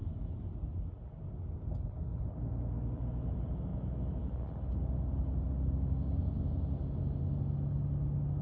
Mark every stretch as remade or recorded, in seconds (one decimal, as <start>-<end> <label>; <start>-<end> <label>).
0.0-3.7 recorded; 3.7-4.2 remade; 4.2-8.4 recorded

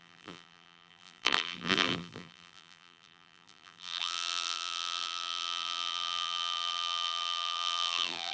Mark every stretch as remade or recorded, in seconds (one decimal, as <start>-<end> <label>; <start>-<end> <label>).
0.0-8.3 remade

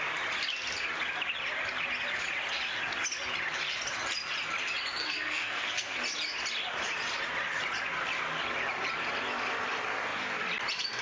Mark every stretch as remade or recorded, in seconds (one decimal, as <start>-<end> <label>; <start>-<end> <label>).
0.0-5.0 recorded; 5.0-6.0 remade; 6.0-11.0 recorded